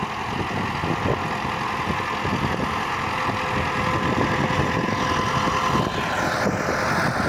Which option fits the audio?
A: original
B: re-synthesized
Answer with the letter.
A